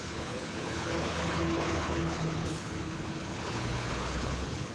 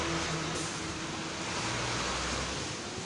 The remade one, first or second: first